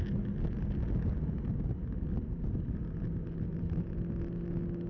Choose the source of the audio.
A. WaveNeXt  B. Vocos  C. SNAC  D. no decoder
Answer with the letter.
D